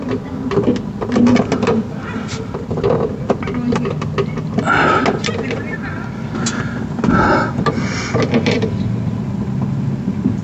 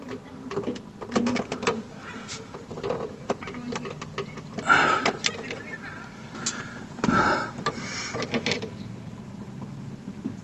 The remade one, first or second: second